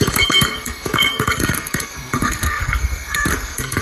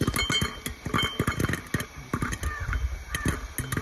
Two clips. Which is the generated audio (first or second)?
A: first